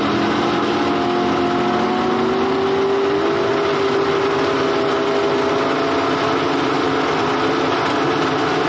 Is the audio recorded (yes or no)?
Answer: yes